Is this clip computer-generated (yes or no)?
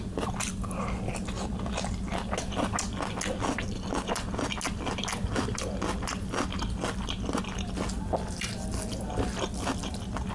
no